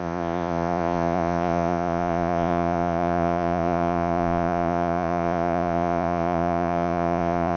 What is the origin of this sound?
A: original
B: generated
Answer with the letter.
B